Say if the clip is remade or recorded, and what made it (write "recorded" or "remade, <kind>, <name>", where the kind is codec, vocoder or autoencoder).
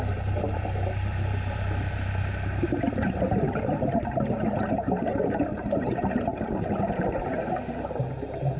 remade, vocoder, BigVGAN v2